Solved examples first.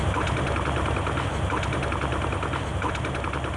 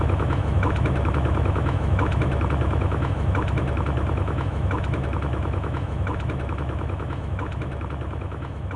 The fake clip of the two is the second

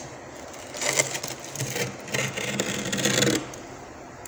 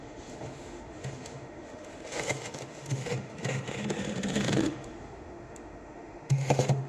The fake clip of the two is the second